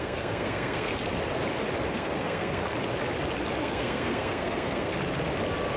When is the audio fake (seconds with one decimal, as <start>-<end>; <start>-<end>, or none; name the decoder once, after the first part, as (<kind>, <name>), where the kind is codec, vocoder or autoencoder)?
0.0-0.9 (codec, SNAC); 1.9-2.6; 3.6-4.9